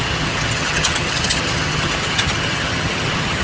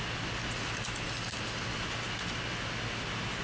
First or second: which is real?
second